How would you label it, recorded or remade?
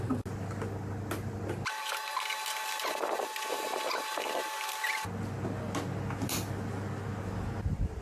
recorded